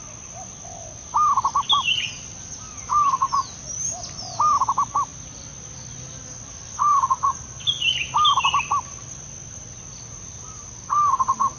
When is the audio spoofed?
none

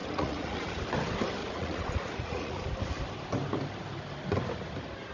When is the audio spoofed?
0.0-0.8 (vocoder, Vocos); 1.4-2.6

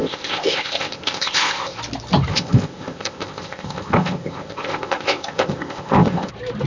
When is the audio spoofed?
0.0-1.8 (codec, ZipCodec); 2.3-6.3

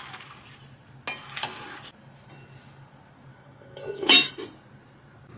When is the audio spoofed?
3.3-4.3 (autoencoder, DAC-VAE)

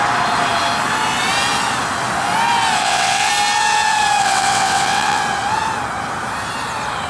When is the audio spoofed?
2.8-3.3 (vocoder, WaveNeXt); 4.2-5.2

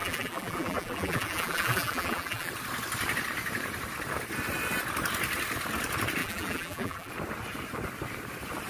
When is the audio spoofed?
0.0-2.5 (vocoder, BigVGAN v2); 6.2-7.1

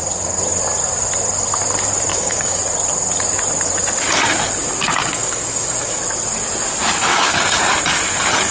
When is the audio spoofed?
2.1-2.6 (codec, DAC); 5.0-6.0; 7.1-7.6

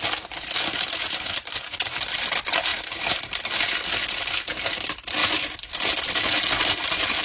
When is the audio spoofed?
none